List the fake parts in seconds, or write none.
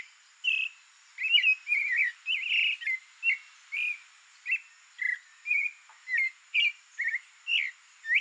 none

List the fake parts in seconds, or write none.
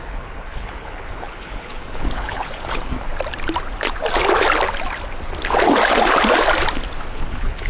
0.0-2.9 (codec, HILCodec); 7.1-7.7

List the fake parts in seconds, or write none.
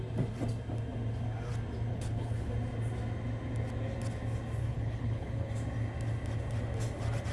1.9-2.5 (codec, HILCodec); 4.6-5.5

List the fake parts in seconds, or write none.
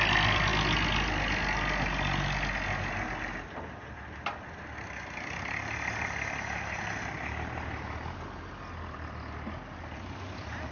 none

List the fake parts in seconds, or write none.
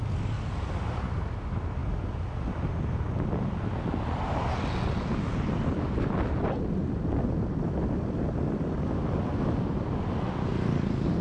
none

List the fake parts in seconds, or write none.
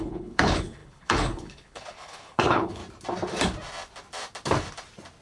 0.0-2.8 (codec, HILCodec)